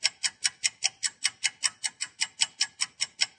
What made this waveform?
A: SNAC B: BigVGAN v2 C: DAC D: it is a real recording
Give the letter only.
D